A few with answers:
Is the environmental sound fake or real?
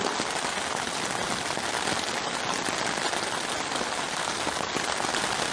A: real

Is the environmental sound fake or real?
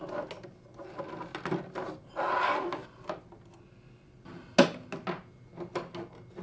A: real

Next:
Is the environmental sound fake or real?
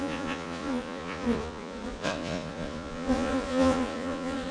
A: fake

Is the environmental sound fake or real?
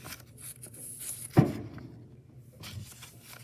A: real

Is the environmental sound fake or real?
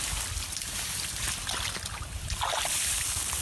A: real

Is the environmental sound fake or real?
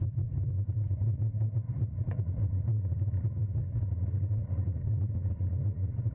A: fake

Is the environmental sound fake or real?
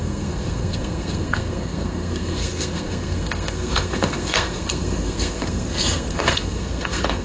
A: fake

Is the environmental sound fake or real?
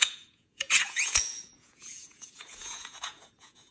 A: fake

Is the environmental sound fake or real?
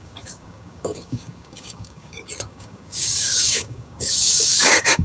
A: fake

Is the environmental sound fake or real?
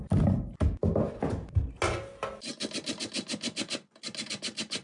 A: real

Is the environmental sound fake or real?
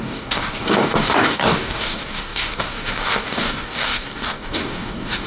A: fake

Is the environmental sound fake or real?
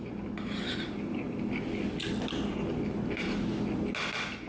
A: real